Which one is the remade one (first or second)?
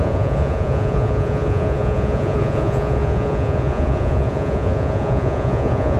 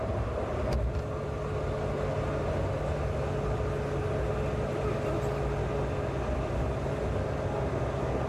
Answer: first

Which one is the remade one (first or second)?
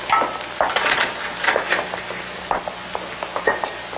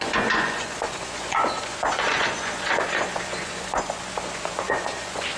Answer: second